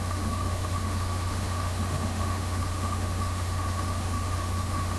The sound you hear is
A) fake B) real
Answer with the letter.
A